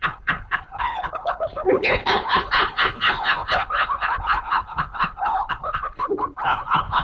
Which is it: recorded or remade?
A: remade